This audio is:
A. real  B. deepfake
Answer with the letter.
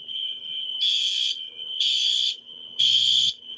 B